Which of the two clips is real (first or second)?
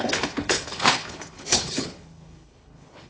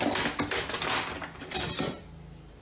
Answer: second